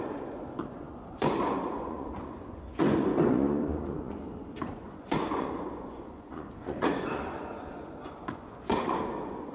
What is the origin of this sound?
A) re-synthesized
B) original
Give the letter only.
A